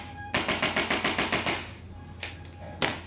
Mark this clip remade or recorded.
recorded